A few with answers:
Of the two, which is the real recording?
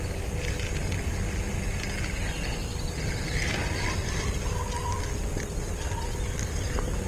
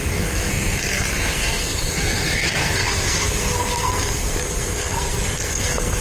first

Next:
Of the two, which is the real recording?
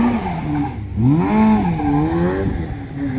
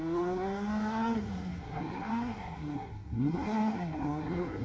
first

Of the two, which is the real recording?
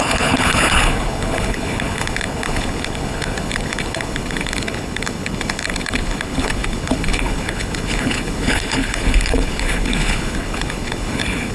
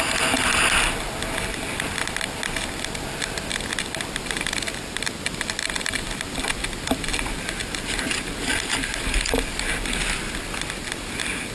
second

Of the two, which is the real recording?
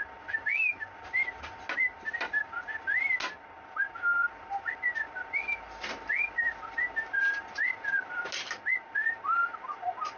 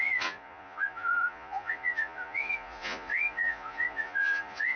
first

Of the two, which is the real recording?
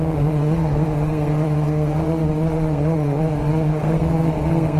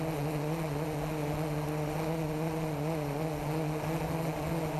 second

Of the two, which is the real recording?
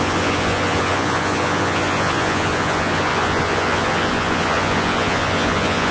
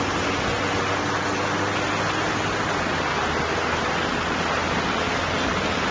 second